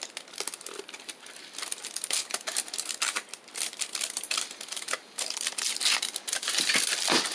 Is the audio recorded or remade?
recorded